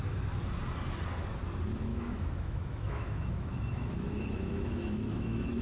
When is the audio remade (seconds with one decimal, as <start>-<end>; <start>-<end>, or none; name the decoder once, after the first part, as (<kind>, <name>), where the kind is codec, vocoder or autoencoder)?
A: 1.9-5.6 (autoencoder, DAC-VAE)